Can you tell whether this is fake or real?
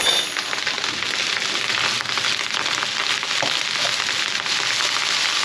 real